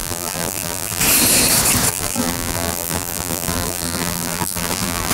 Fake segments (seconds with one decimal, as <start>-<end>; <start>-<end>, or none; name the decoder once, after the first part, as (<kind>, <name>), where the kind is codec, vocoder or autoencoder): 0.0-1.0 (vocoder, BigVGAN v2); 1.9-5.1